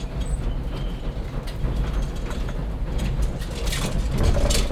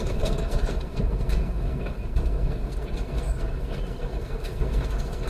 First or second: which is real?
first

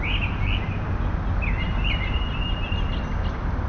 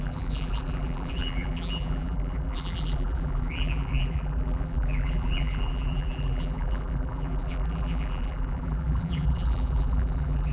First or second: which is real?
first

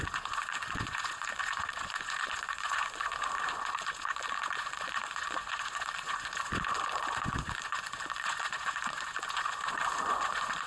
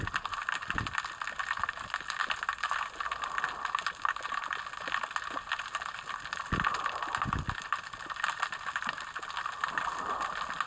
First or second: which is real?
second